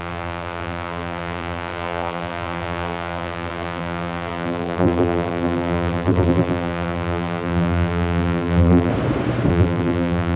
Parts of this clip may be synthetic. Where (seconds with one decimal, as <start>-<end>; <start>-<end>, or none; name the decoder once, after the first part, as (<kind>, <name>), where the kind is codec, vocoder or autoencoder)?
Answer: 0.0-8.9 (vocoder, BigVGAN v2); 9.5-10.4